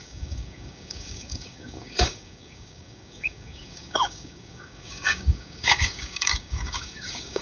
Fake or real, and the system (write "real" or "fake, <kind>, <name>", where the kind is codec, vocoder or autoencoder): fake, codec, DAC